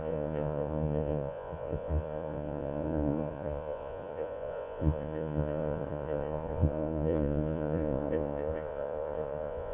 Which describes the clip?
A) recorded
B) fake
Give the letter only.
B